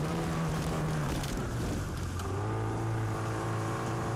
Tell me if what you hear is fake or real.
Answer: fake